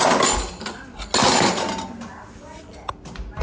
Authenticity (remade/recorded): recorded